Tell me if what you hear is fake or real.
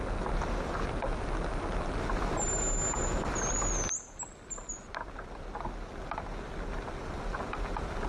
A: real